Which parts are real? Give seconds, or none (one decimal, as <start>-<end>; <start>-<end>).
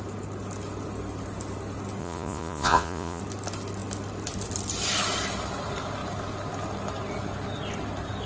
0.0-2.0; 3.2-8.3